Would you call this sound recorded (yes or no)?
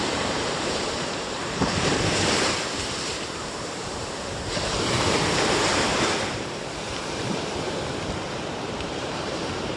no